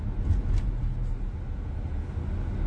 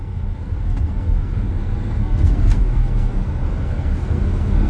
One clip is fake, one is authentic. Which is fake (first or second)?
second